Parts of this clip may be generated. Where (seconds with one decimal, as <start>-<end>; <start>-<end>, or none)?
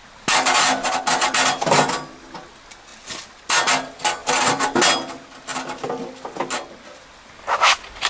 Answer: none